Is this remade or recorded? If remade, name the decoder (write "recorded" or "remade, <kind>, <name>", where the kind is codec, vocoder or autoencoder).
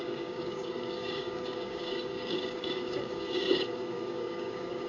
remade, codec, DAC